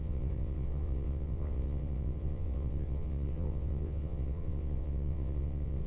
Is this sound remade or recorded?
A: remade